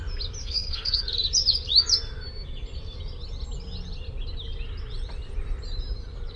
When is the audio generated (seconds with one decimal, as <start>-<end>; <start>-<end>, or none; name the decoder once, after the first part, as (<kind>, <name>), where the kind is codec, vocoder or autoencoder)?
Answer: 0.4-1.0 (codec, SNAC)